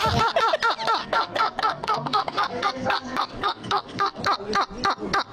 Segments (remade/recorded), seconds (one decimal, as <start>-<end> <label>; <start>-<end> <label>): 0.0-1.0 recorded; 1.0-4.2 remade; 4.2-5.3 recorded